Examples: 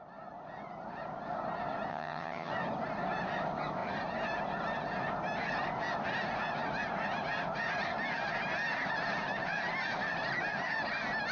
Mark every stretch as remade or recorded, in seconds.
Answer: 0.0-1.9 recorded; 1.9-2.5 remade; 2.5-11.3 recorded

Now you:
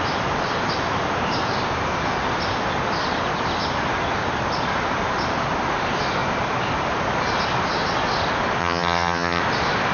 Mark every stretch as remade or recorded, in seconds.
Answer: 0.0-8.6 recorded; 8.6-9.4 remade; 9.4-9.9 recorded